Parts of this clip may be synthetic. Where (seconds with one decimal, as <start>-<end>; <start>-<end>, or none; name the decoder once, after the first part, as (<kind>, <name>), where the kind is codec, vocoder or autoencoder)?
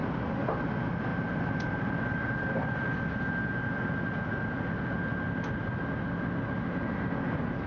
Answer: 0.0-0.7 (vocoder, BigVGAN v2); 1.1-3.1